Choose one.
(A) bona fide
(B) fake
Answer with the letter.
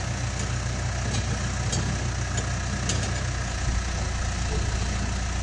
A